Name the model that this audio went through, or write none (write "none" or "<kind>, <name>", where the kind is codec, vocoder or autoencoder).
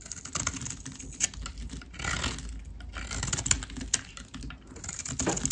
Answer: none